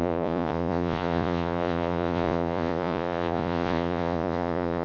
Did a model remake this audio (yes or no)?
yes